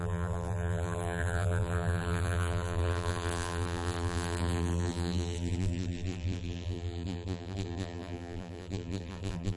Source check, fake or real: fake